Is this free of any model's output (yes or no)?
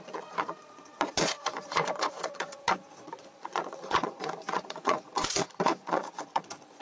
no